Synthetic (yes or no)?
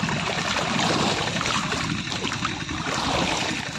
no